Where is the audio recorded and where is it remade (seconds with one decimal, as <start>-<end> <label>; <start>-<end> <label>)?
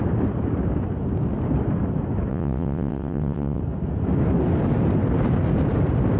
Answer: 0.0-2.3 recorded; 2.3-3.6 remade; 3.6-6.2 recorded